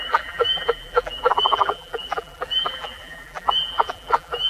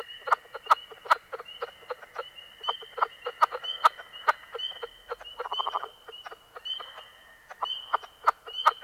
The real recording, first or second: second